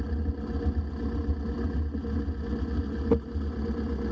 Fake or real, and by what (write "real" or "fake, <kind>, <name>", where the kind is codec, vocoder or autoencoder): real